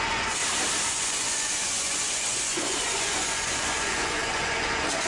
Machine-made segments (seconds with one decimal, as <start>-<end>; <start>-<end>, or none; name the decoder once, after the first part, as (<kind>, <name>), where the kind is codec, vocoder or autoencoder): 0.0-0.4 (vocoder, Vocos); 0.9-5.1